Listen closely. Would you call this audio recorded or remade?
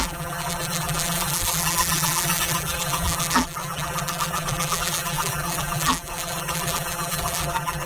remade